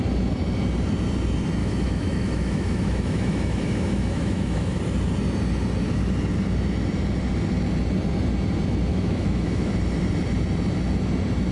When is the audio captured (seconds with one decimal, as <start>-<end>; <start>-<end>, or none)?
0.0-1.6; 4.8-8.9; 9.7-11.5